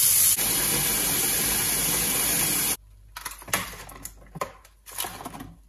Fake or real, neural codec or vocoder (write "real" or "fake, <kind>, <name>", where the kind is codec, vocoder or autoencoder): real